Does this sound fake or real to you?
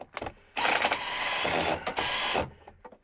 real